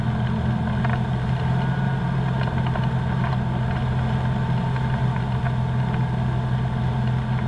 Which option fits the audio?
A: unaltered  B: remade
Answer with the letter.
A